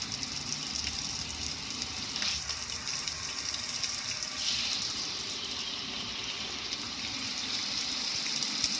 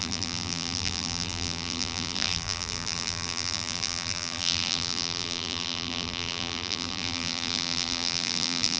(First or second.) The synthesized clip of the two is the second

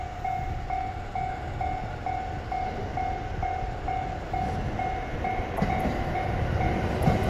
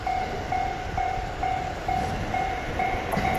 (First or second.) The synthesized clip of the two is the second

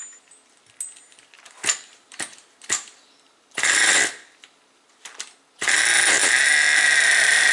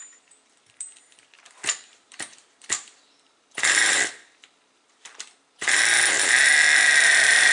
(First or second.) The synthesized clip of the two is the second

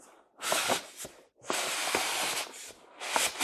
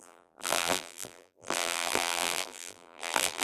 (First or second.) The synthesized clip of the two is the second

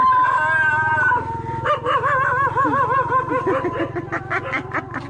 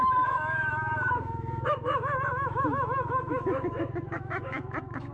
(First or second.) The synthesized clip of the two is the second